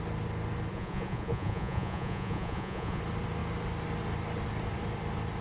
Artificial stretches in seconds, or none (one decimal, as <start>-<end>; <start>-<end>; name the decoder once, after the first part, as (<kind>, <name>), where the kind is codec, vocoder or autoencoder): 0.7-3.0 (vocoder, Vocos)